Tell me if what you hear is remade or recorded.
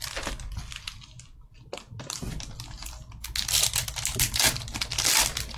recorded